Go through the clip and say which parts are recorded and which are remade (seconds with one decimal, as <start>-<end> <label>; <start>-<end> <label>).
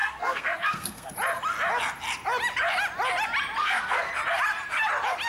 0.0-1.1 remade; 1.1-3.6 recorded; 3.6-4.1 remade; 4.1-5.3 recorded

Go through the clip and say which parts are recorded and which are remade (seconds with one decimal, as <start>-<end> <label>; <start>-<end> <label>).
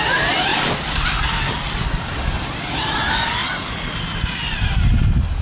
0.0-5.4 recorded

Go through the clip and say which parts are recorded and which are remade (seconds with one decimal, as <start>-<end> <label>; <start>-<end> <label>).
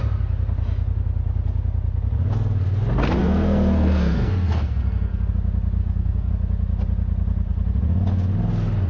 0.0-3.2 recorded; 3.2-5.3 remade; 5.3-5.8 recorded; 5.8-6.3 remade; 6.3-8.9 recorded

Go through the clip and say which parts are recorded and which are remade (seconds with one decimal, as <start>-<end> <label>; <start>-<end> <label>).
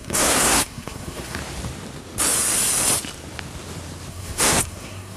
0.0-1.4 remade; 1.4-4.1 recorded; 4.1-5.2 remade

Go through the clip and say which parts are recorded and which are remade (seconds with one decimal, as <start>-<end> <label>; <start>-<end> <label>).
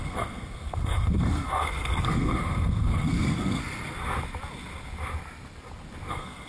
0.0-3.6 remade; 3.6-6.1 recorded; 6.1-6.5 remade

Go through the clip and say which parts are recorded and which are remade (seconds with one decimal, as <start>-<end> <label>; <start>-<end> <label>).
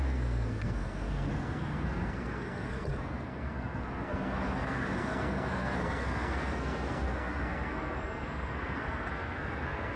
0.0-10.0 remade